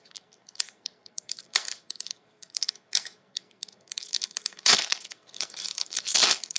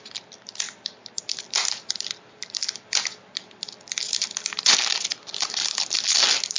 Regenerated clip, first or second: first